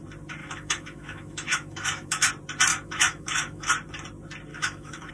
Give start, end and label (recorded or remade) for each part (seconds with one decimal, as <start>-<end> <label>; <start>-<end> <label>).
0.0-0.4 recorded; 0.4-2.3 remade; 2.3-2.7 recorded; 2.7-3.7 remade; 3.7-4.5 recorded; 4.5-5.1 remade